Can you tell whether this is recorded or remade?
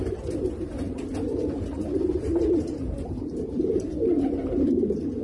remade